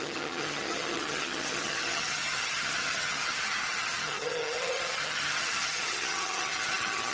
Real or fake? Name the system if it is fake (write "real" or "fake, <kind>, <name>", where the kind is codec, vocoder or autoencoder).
fake, vocoder, HiFi-GAN